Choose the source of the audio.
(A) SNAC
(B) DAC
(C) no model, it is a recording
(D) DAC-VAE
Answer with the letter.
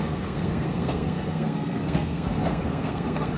A